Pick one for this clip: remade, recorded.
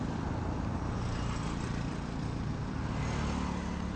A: recorded